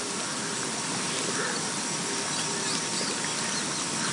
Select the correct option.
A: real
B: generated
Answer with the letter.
A